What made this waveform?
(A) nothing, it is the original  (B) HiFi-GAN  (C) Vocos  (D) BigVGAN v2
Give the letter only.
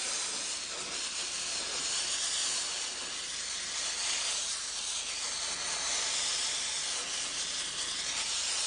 A